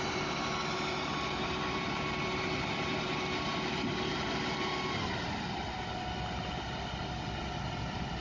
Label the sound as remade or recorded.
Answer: recorded